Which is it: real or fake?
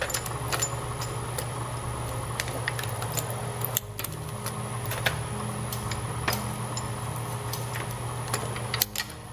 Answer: real